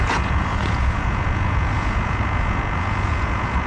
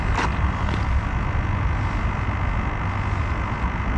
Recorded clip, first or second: second